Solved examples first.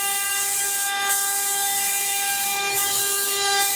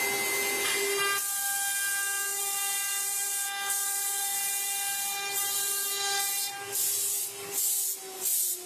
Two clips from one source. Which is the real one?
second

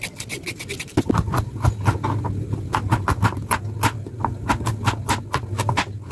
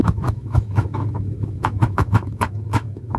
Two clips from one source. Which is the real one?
first